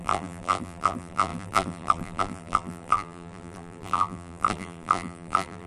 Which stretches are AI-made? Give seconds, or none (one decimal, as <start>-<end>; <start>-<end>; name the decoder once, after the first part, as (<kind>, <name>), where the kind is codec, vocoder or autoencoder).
0.0-5.7 (vocoder, BigVGAN v2)